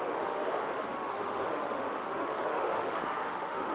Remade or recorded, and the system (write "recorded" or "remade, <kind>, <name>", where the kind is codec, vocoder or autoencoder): remade, autoencoder, DAC-VAE